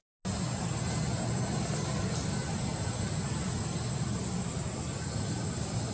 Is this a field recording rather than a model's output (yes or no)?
yes